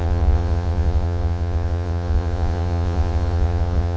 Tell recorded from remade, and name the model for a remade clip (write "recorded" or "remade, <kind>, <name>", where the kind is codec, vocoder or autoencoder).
remade, vocoder, Vocos